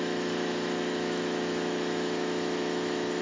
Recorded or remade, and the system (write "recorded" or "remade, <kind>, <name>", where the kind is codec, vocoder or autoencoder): remade, autoencoder, DAC-VAE